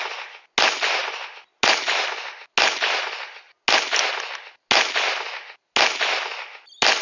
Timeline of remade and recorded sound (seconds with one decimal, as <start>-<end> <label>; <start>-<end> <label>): 0.0-7.0 recorded